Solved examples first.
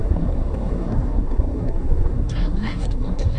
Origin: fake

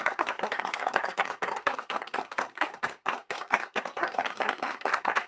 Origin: fake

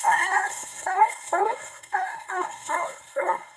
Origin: fake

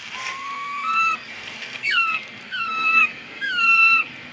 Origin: fake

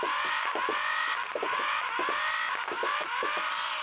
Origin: real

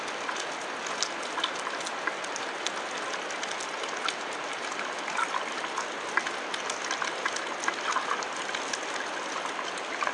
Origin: real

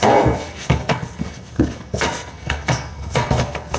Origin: fake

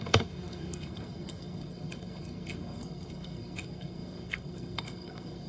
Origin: fake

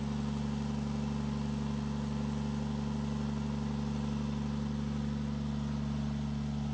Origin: real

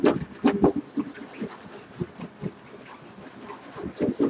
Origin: real